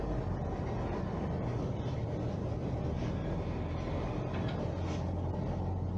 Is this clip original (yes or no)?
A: yes